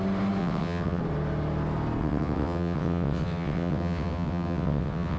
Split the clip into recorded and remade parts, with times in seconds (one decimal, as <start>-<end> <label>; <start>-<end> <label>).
0.0-0.4 recorded; 0.4-1.0 remade; 1.0-2.0 recorded; 2.0-5.2 remade